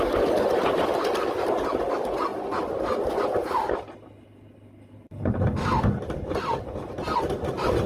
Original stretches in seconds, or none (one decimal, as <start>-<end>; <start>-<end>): 0.0-7.9